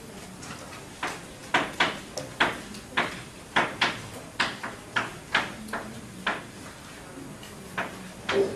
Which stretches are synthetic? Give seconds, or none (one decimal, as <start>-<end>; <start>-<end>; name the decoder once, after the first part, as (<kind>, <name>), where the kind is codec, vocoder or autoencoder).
none